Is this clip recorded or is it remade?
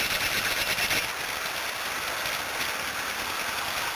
recorded